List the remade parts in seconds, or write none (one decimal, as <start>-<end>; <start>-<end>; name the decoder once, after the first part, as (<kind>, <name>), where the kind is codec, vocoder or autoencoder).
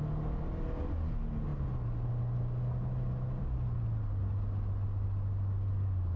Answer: none